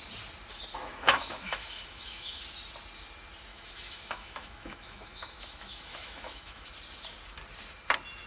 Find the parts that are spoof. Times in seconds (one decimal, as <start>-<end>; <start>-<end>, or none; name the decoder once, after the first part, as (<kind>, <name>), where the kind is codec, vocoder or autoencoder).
0.7-2.4 (autoencoder, DAC-VAE); 3.5-6.7